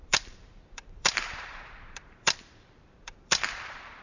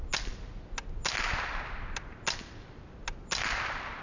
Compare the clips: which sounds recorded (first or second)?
second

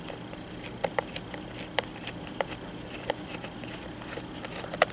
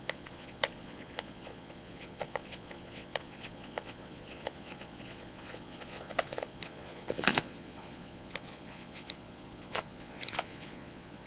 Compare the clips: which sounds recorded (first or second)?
first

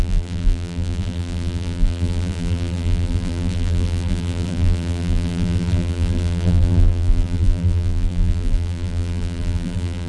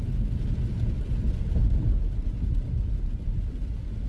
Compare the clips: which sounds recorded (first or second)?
second